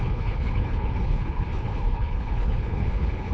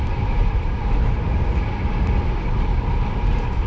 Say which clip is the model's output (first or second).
first